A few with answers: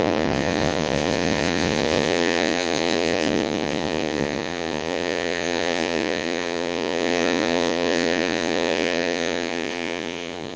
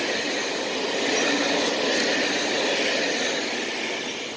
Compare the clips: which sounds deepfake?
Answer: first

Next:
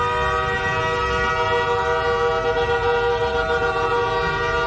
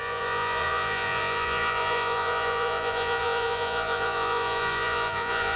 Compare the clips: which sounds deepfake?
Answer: second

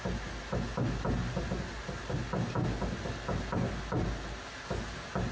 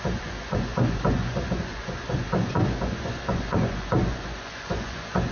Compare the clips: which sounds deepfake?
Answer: second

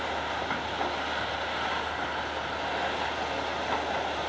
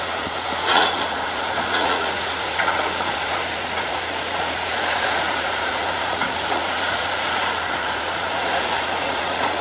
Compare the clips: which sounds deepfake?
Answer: second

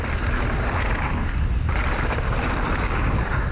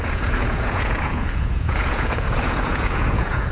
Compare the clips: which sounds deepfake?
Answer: second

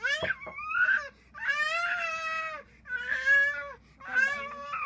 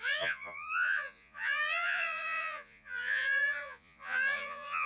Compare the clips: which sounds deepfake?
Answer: second